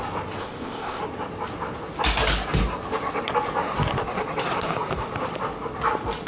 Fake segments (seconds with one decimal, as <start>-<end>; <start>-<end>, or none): 0.4-1.0